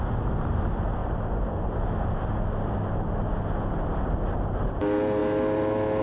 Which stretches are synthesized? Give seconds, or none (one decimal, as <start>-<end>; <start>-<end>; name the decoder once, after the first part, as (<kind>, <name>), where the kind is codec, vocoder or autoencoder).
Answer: none